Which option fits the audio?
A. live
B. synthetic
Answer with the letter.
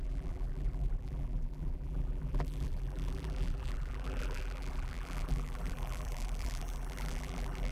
B